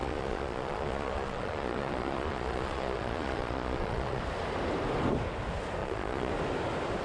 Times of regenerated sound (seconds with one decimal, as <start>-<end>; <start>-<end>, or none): 0.0-4.2; 5.8-6.3